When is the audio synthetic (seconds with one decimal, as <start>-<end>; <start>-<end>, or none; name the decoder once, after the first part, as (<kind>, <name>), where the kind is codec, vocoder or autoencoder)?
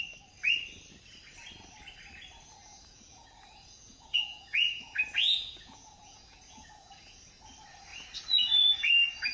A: 2.6-7.4 (vocoder, Vocos); 7.9-8.9